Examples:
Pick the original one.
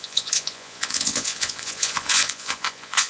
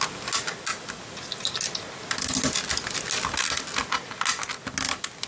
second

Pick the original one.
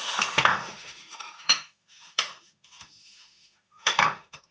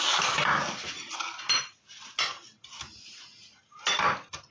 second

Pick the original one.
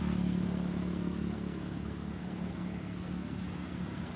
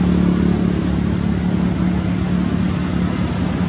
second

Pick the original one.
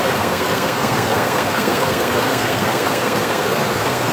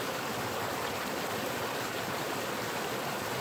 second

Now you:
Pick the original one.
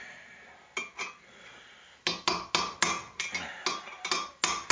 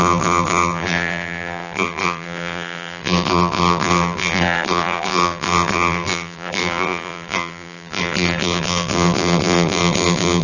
first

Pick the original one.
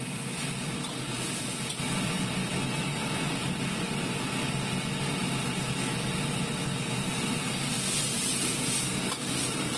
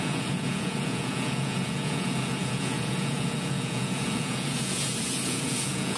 first